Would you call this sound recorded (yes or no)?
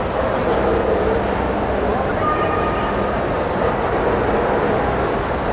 yes